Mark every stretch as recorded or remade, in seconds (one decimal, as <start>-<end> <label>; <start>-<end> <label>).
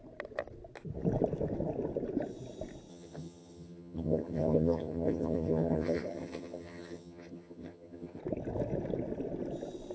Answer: 0.0-2.9 recorded; 2.9-8.2 remade; 8.2-9.9 recorded